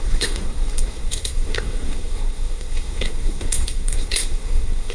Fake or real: fake